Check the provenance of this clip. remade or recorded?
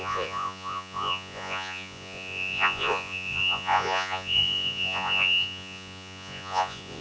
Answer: remade